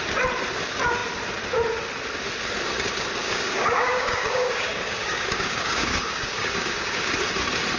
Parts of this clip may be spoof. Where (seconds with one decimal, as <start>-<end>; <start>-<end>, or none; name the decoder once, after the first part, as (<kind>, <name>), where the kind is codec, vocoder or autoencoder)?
3.2-7.1 (codec, DAC)